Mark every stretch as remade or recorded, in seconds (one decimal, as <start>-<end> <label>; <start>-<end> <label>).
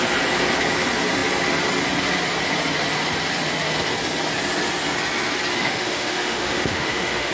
0.0-5.6 recorded; 5.6-7.3 remade